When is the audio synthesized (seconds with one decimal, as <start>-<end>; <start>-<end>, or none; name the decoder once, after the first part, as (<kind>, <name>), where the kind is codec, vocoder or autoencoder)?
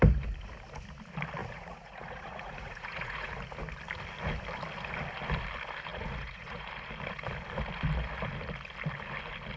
1.4-3.3 (vocoder, Vocos); 5.9-6.7